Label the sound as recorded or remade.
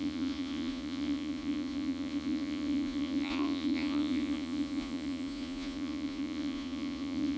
remade